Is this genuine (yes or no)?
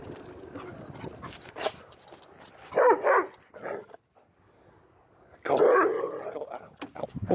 yes